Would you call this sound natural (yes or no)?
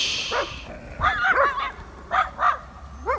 yes